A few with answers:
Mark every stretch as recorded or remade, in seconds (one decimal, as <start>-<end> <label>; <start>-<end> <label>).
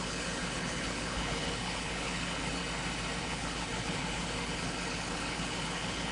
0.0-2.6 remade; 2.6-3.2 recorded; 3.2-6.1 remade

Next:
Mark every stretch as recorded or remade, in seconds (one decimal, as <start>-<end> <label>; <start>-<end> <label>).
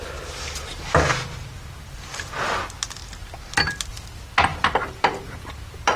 0.0-0.7 recorded; 0.7-2.5 remade; 2.5-4.5 recorded; 4.5-6.0 remade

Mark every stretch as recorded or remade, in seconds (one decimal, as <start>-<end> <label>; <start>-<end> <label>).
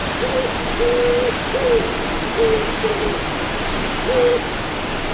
0.0-5.1 recorded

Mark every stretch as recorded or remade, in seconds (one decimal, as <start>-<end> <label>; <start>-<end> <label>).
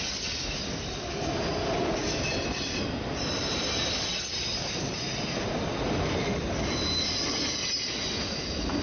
0.0-8.8 recorded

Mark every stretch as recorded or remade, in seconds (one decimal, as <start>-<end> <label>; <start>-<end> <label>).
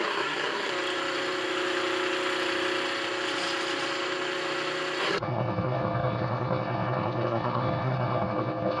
0.0-0.7 remade; 0.7-5.0 recorded; 5.0-8.8 remade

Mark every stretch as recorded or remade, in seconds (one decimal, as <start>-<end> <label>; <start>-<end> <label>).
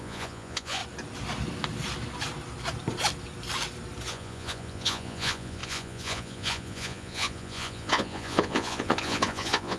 0.0-0.8 remade; 0.8-4.1 recorded; 4.1-9.8 remade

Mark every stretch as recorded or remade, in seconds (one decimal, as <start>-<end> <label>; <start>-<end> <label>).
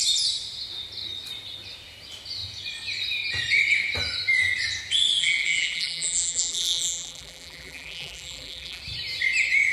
0.0-5.2 recorded; 5.2-8.8 remade; 8.8-9.7 recorded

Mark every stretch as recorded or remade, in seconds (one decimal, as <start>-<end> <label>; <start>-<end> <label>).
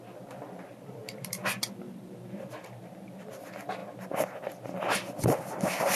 0.0-3.8 remade; 3.8-6.0 recorded